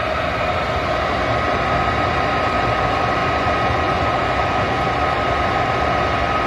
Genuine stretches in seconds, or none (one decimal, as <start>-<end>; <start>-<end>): 0.0-3.2; 4.8-6.5